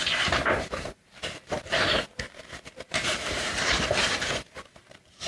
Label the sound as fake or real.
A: fake